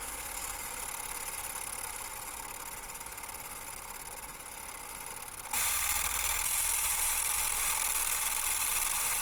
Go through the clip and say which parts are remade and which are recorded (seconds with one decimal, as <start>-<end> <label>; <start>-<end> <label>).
0.0-9.2 recorded